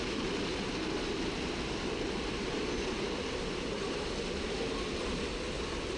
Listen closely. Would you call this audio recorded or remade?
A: recorded